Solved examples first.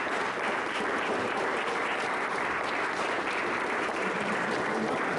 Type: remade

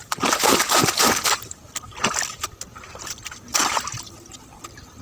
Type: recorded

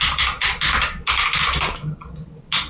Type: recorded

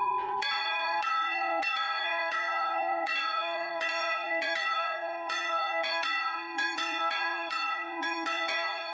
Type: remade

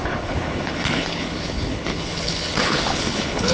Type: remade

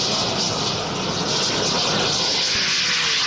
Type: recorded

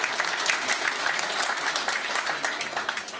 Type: recorded